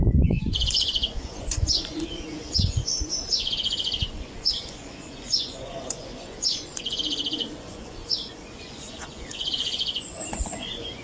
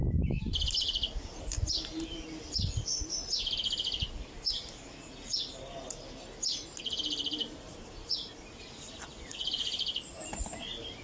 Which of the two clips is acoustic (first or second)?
second